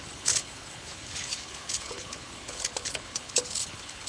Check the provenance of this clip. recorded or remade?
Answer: remade